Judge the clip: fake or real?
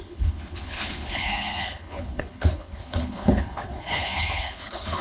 fake